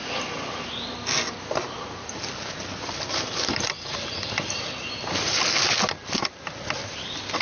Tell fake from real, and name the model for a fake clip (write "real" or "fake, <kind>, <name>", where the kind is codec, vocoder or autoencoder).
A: real